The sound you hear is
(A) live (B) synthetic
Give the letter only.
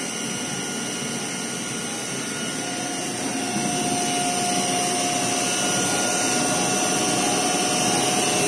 A